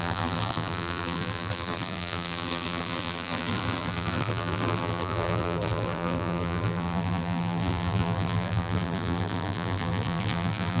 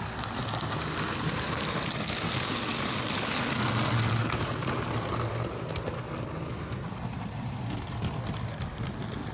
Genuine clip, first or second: second